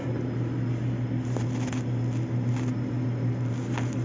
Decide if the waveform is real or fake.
real